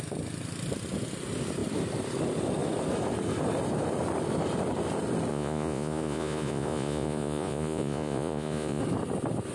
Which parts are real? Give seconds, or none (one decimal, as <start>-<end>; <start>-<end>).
0.0-5.3; 8.8-9.5